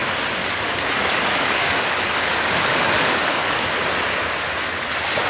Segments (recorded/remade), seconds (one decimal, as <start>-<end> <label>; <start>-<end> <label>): 0.0-0.4 recorded; 0.4-3.6 remade; 3.6-5.3 recorded